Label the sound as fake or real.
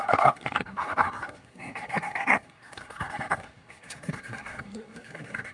fake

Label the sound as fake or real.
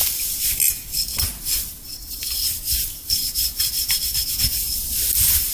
real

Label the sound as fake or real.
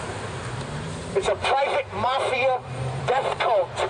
fake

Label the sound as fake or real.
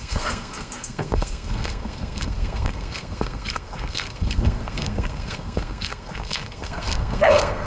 fake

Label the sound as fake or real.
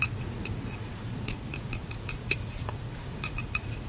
fake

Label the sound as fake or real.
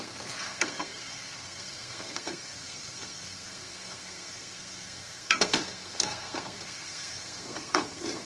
fake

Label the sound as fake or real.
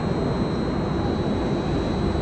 real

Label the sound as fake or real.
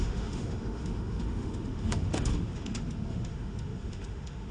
fake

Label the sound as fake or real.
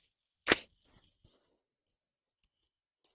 real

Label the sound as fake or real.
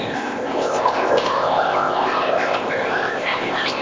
fake